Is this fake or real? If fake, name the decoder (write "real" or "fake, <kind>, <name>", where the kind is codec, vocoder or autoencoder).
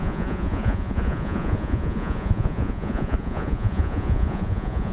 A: fake, vocoder, Vocos